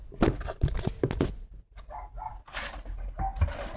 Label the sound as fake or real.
real